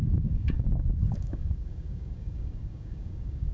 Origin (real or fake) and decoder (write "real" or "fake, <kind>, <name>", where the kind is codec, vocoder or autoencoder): fake, codec, DAC